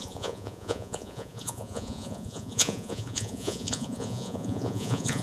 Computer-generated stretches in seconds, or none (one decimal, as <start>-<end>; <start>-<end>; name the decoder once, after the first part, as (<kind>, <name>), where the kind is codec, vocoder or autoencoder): 0.0-5.2 (vocoder, Vocos)